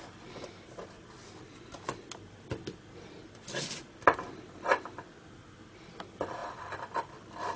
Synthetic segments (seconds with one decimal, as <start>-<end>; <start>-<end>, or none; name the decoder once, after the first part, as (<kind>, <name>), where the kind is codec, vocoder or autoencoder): none